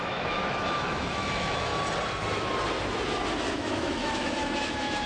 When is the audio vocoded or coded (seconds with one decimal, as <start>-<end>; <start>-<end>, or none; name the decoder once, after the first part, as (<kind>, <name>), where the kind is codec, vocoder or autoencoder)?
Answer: 0.0-1.7 (autoencoder, DAC-VAE); 3.5-5.1